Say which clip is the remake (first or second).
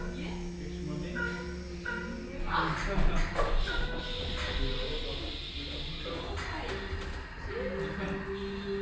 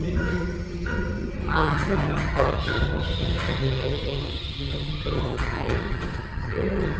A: second